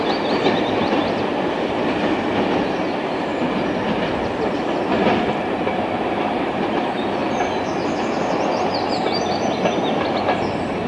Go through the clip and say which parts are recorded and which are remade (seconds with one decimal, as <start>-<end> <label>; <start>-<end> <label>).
0.0-10.9 recorded